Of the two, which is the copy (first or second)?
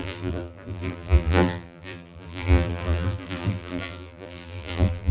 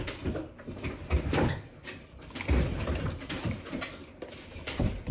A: first